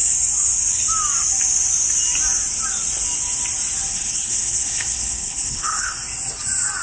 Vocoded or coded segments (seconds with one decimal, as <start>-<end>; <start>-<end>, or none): 3.9-5.9